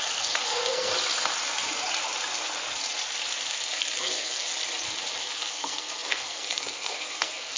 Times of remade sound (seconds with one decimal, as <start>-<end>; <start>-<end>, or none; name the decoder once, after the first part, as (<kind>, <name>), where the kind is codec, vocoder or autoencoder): 0.0-0.9 (codec, SNAC); 4.0-4.5; 5.2-7.6